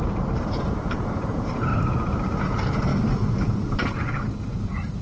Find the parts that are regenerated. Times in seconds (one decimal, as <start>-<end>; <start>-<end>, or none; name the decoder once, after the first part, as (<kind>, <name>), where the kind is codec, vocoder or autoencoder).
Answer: 0.0-1.7 (vocoder, BigVGAN v2); 2.4-2.9; 4.4-5.0

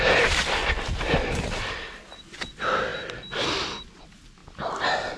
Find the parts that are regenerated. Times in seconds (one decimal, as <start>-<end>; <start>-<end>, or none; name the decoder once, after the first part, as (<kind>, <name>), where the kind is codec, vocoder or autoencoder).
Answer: none

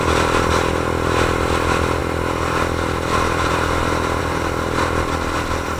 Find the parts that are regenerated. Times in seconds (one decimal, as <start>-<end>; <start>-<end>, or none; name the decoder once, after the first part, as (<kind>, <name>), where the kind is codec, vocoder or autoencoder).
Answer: none

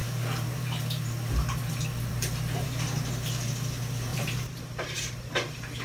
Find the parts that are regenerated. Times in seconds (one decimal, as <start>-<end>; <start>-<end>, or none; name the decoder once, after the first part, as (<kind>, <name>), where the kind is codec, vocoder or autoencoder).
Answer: 0.0-1.7 (vocoder, BigVGAN v2); 2.1-3.1; 4.1-5.3

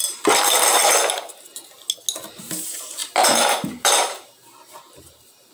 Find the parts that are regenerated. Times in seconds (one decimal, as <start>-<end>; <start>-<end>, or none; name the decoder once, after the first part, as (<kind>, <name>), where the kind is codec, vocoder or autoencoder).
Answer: 0.0-0.8 (vocoder, BigVGAN v2); 2.4-5.5

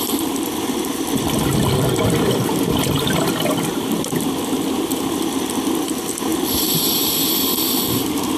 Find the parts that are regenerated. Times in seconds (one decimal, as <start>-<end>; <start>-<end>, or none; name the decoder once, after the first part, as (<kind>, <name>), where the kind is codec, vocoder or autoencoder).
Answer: 0.0-6.3 (vocoder, BigVGAN v2); 7.0-8.4

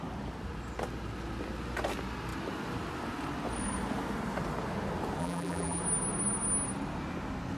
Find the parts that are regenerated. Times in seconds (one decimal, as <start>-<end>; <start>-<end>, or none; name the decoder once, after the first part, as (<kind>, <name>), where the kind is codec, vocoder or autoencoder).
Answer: 5.2-5.8 (vocoder, BigVGAN v2)

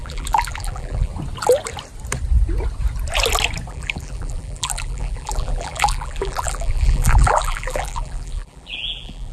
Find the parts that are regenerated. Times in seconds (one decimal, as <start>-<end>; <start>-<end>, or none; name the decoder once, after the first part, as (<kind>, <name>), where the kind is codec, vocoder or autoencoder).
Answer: 0.0-1.1 (vocoder, BigVGAN v2); 3.7-9.3